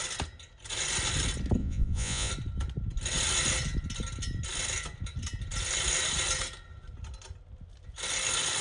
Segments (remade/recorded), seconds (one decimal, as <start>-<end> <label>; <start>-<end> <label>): 0.0-1.6 recorded; 1.6-2.3 remade; 2.3-8.6 recorded